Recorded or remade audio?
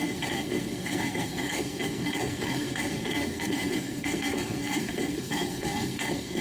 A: remade